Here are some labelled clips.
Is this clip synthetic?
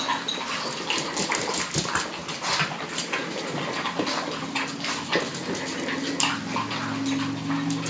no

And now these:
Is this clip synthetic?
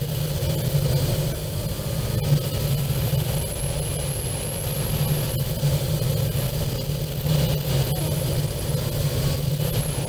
no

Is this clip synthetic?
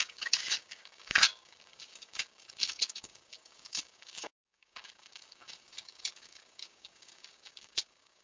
yes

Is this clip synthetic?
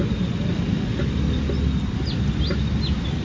no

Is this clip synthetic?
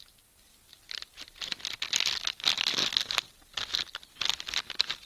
no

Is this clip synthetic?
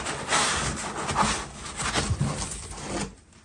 no